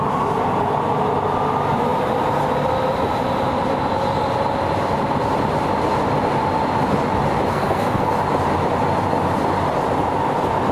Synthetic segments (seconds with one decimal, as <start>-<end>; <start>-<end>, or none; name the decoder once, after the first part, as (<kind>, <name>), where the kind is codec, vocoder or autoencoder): 7.5-8.1 (codec, SNAC)